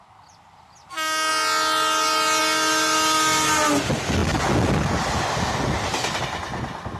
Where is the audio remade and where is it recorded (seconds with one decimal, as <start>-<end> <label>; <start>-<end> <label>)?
0.0-7.0 recorded